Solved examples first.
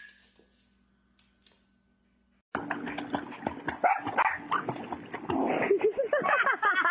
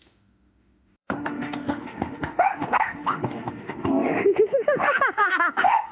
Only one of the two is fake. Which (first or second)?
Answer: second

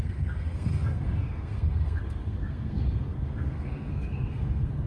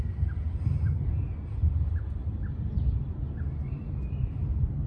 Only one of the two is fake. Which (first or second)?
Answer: first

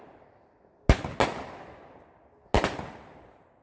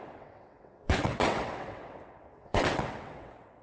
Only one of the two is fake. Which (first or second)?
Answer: second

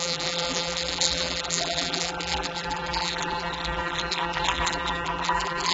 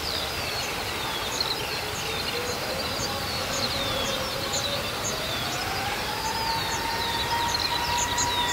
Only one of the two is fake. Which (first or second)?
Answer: first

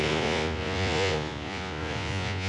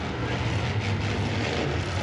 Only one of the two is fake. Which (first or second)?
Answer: first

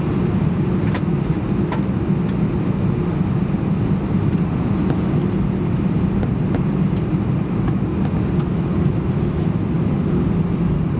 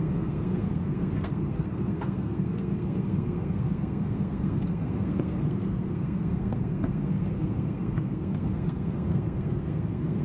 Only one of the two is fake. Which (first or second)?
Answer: second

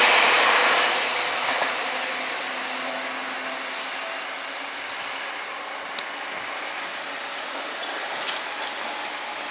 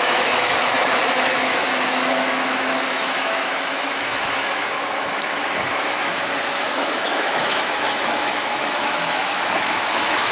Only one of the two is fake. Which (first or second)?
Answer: second